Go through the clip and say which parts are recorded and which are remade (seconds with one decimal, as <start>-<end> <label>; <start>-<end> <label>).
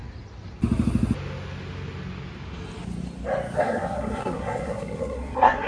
0.0-3.6 recorded; 3.6-5.7 remade